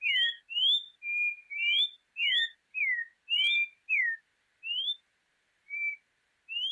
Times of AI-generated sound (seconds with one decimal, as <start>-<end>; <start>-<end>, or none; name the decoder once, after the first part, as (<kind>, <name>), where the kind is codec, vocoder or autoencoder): none